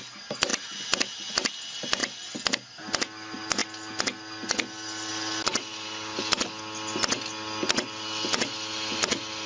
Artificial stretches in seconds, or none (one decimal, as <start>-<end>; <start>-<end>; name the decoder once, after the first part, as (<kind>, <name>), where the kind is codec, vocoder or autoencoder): none